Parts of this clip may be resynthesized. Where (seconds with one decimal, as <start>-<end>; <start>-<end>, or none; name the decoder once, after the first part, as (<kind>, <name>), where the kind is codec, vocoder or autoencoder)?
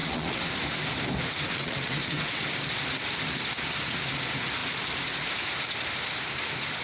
0.0-0.5 (vocoder, WaveNeXt); 1.5-2.4